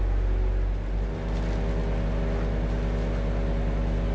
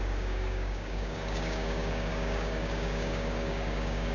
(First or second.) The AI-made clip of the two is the second